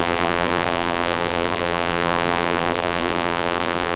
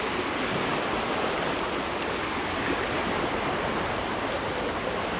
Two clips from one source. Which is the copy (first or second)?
first